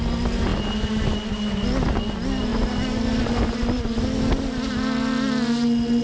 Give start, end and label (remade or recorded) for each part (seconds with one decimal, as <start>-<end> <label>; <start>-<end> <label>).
0.0-6.0 recorded